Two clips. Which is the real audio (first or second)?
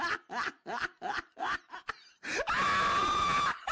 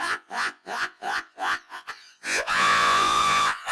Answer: first